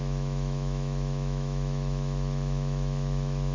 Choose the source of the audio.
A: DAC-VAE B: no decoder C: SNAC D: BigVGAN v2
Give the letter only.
A